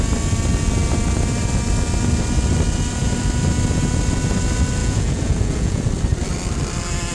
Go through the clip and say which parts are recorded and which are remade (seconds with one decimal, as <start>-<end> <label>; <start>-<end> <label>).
0.0-4.8 recorded; 4.8-5.8 remade; 5.8-7.1 recorded